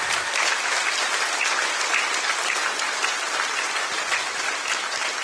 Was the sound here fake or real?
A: fake